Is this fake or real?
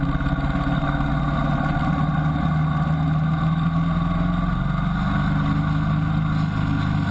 real